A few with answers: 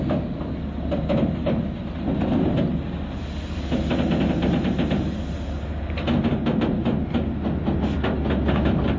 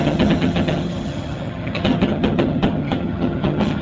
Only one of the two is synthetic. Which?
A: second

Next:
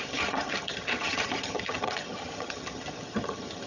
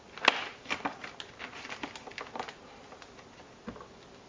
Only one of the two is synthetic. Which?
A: first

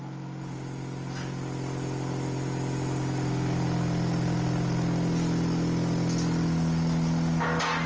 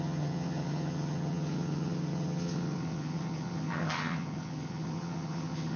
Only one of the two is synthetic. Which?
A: second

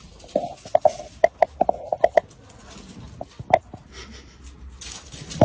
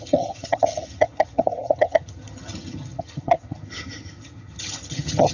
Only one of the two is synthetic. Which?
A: second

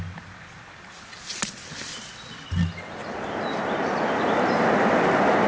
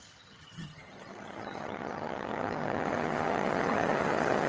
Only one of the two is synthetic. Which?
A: second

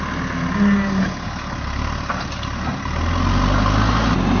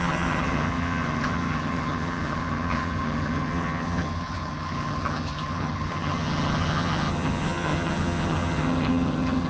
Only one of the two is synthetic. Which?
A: second